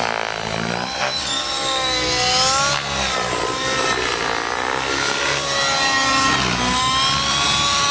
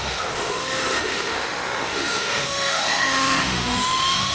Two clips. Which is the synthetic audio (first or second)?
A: second